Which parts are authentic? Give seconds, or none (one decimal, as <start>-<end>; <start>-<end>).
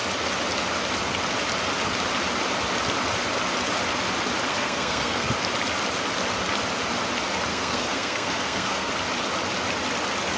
0.0-4.5; 5.3-7.5; 8.9-10.4